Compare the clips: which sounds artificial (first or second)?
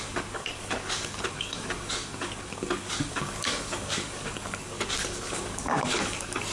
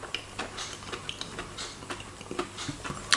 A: first